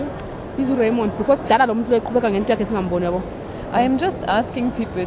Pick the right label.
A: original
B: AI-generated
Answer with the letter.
A